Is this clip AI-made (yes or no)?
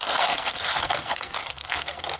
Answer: yes